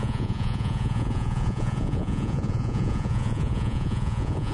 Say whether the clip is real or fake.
fake